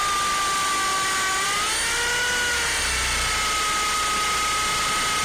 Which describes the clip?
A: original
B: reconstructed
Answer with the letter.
A